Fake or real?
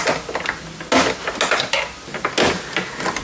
real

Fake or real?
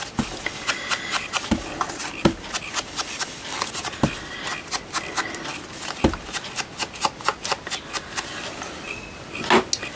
real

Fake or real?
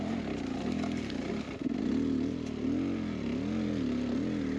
real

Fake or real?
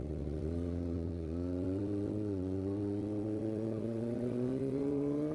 fake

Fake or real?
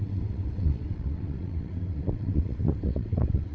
fake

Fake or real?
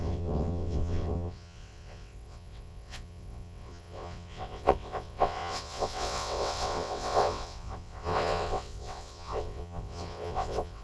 fake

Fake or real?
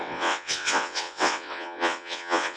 fake